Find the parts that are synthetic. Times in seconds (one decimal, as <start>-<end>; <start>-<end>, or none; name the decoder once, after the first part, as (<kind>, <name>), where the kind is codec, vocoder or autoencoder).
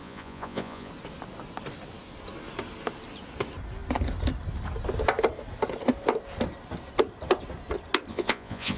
0.0-0.9 (vocoder, Vocos); 8.1-8.8